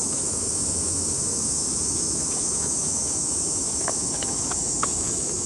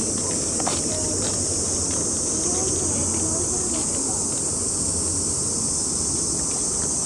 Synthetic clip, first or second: first